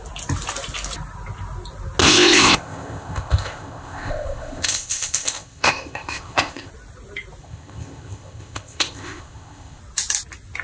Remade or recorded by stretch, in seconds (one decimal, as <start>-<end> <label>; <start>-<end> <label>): 0.0-2.0 recorded; 2.0-6.7 remade; 6.7-7.4 recorded; 7.4-9.8 remade; 9.8-10.6 recorded